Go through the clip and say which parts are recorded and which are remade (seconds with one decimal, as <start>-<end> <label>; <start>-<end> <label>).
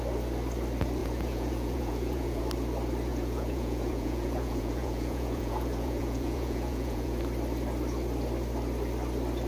0.0-1.0 recorded; 1.0-2.4 remade; 2.4-3.1 recorded; 3.1-7.2 remade; 7.2-9.5 recorded